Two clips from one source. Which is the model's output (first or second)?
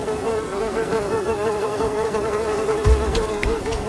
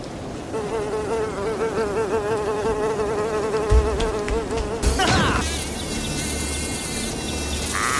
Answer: first